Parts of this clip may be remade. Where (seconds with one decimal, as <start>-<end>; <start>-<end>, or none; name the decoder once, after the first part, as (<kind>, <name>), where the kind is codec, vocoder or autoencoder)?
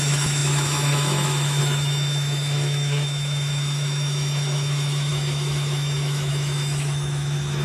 0.0-7.6 (autoencoder, DAC-VAE)